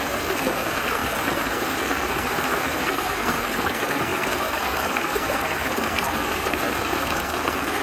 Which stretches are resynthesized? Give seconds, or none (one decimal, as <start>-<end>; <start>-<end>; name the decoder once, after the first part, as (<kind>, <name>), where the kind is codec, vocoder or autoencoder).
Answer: 0.0-7.8 (codec, SNAC)